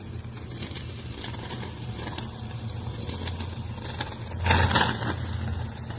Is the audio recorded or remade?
recorded